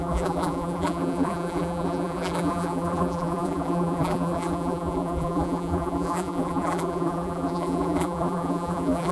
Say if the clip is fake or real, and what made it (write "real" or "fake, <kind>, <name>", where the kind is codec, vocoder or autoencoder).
fake, vocoder, BigVGAN v2